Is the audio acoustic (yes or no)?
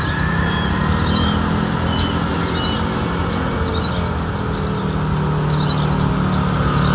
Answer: yes